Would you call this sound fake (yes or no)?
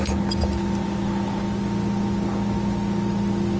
no